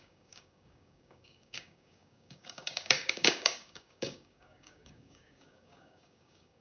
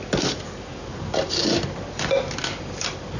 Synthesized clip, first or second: first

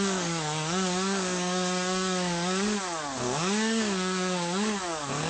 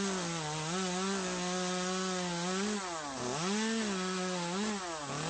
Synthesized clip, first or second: first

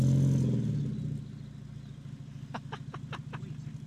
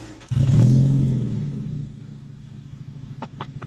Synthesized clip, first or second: second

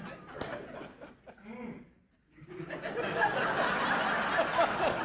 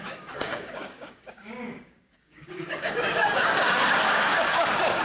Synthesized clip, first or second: second